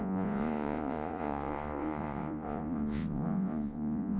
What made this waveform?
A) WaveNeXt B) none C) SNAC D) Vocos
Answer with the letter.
D